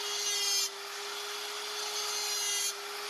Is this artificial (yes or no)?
no